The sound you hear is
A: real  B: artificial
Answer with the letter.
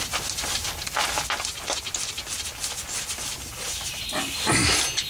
A